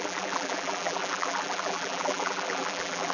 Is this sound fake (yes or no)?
yes